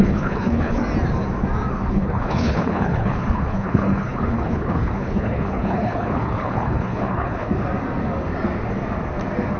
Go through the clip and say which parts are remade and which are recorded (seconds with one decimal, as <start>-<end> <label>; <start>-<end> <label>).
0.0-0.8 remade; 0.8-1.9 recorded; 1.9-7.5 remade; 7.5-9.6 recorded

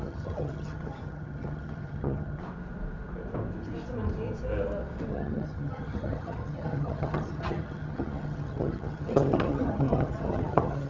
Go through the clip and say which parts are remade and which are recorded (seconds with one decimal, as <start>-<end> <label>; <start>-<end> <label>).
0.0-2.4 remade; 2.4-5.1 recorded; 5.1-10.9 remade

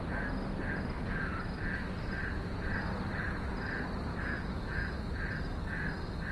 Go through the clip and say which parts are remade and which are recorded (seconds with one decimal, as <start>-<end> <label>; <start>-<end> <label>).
0.0-4.1 recorded; 4.1-5.0 remade; 5.0-6.3 recorded

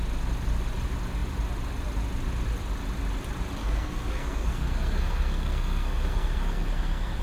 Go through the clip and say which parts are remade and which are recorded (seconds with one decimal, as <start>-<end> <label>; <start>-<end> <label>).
0.0-3.6 recorded; 3.6-7.2 remade

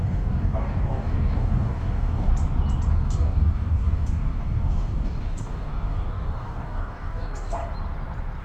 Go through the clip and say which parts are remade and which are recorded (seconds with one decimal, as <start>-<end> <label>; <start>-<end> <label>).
0.0-2.3 remade; 2.3-2.9 recorded; 2.9-7.6 remade; 7.6-8.4 recorded

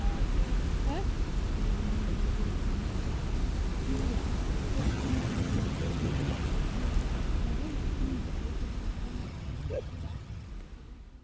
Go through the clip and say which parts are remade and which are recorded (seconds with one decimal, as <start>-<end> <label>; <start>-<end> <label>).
0.0-4.8 recorded; 4.8-6.5 remade; 6.5-9.2 recorded; 9.2-10.5 remade; 10.5-11.2 recorded